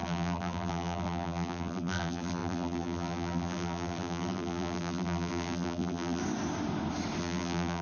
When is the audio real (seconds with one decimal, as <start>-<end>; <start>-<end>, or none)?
6.2-7.2